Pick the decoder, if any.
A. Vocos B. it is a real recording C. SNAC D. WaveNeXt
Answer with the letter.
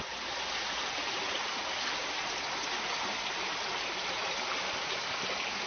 B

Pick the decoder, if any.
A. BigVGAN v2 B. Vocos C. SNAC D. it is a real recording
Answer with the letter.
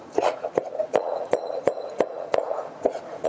B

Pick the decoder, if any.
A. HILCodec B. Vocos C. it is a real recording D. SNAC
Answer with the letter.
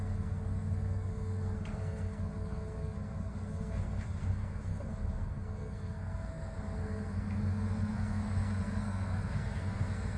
D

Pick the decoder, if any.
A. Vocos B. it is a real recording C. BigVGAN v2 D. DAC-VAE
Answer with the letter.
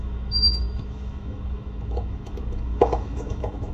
D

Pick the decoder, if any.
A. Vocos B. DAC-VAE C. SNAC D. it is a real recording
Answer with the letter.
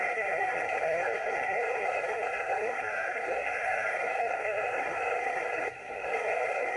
C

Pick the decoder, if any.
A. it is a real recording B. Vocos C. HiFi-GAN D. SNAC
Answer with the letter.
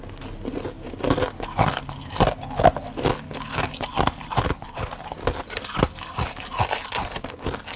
A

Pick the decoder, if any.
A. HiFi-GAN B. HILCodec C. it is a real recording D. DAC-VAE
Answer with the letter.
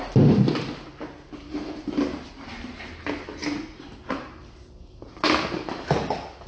C